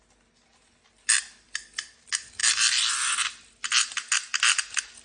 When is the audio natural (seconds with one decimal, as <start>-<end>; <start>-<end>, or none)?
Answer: 0.0-0.5; 1.9-2.4; 2.9-5.0

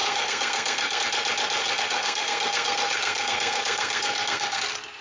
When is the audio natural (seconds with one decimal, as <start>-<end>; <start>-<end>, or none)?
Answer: 1.0-1.6; 4.6-5.0

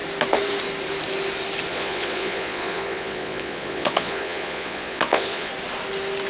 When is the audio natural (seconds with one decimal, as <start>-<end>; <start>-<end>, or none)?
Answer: 0.0-1.7; 5.5-6.3

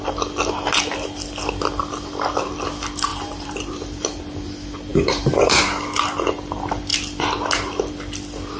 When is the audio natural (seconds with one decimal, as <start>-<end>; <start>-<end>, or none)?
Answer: 0.0-3.1; 4.2-4.9; 5.6-8.6

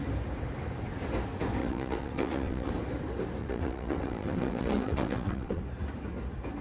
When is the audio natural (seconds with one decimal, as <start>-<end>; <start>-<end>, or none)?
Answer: 0.0-1.6; 2.7-3.4; 5.6-6.6